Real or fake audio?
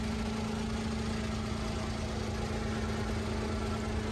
real